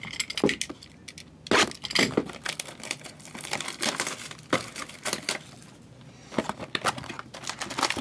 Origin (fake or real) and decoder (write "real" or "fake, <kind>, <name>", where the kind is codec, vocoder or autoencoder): real